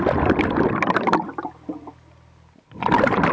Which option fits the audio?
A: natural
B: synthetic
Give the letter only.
A